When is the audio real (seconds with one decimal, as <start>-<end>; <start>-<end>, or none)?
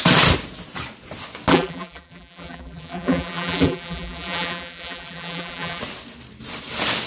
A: 0.0-1.5; 5.8-7.1